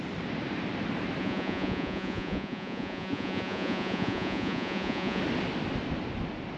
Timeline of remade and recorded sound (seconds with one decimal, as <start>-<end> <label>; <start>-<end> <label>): 0.0-1.2 recorded; 1.2-5.2 remade; 5.2-6.6 recorded